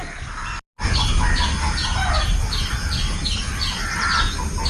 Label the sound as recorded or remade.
recorded